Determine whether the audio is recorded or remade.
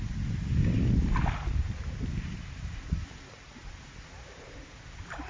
recorded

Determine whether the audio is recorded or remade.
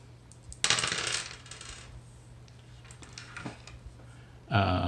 recorded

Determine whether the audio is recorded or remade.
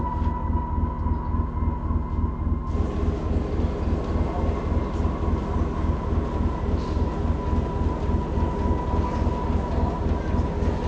recorded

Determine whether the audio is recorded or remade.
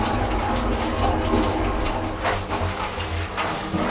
recorded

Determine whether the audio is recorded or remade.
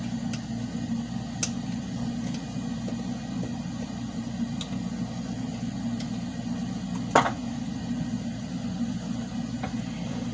recorded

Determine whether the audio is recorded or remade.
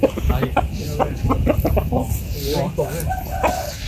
recorded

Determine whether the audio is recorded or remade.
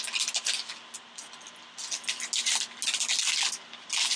recorded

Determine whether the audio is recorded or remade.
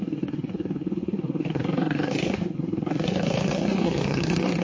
remade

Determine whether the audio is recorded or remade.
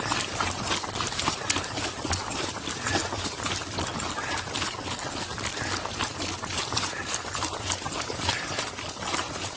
recorded